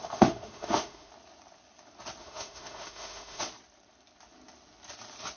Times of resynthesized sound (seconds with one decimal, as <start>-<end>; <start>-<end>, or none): 0.0-1.1; 2.2-3.4